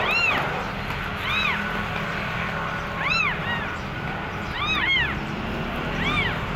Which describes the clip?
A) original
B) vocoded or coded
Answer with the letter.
A